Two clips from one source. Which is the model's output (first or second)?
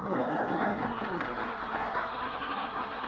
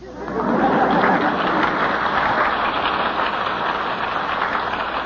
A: first